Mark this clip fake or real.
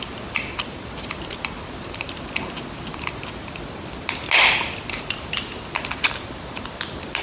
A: real